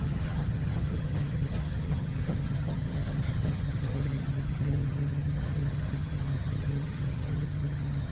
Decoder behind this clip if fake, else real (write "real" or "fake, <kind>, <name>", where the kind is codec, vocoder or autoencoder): fake, vocoder, HiFi-GAN